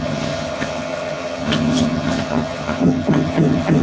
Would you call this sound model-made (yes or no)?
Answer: yes